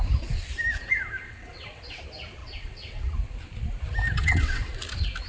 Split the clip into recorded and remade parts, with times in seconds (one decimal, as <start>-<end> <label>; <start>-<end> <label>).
0.0-1.2 recorded; 1.2-2.0 remade; 2.0-2.4 recorded; 2.4-3.1 remade; 3.1-4.2 recorded; 4.2-4.7 remade; 4.7-5.3 recorded